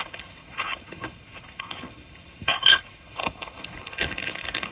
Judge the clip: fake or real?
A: fake